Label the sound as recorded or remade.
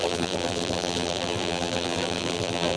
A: remade